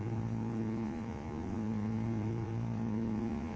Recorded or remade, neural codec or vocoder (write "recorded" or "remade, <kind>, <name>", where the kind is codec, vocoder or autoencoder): remade, vocoder, Vocos